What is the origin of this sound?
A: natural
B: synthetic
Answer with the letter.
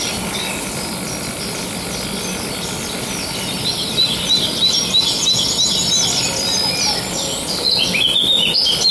A